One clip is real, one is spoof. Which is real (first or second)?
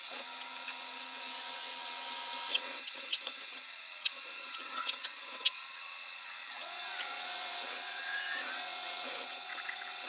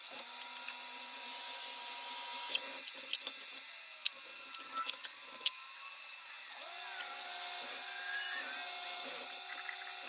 second